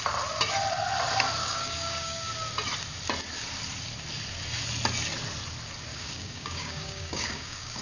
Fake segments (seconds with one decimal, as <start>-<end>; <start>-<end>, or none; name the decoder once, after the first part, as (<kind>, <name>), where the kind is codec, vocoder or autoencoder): 1.4-2.3 (codec, DAC); 5.9-7.8